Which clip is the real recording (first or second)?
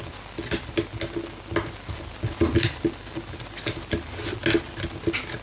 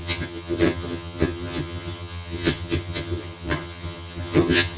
first